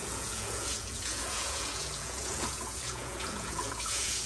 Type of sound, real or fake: fake